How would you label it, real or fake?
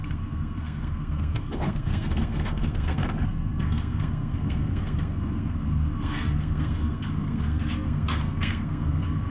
fake